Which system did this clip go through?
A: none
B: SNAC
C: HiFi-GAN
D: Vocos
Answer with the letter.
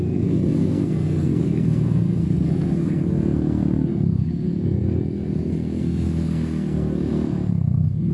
B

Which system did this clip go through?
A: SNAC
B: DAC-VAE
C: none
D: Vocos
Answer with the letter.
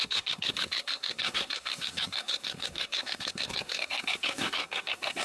A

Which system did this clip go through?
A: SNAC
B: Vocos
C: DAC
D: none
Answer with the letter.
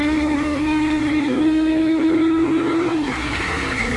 A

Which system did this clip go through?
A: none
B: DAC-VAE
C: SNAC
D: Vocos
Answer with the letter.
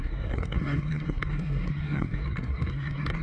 C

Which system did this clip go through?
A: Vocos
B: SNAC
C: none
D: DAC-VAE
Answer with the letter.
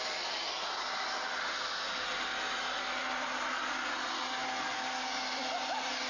C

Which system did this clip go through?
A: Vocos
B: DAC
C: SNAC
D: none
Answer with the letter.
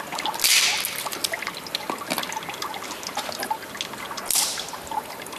D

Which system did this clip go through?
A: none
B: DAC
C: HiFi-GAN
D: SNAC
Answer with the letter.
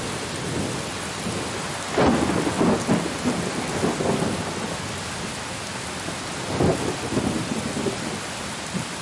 A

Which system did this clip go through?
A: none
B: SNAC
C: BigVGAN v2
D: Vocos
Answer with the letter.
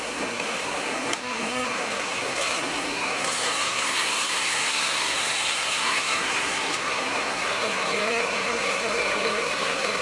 B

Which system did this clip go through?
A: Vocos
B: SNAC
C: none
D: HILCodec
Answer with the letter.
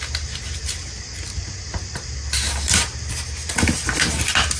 C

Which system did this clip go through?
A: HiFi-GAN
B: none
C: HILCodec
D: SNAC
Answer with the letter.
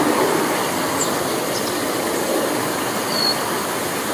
B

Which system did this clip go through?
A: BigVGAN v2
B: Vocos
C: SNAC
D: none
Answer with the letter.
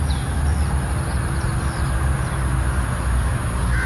D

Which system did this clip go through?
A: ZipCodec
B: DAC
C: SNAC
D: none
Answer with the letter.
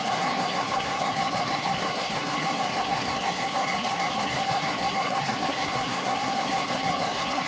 C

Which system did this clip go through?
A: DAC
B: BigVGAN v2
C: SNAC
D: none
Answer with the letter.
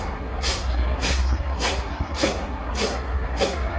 C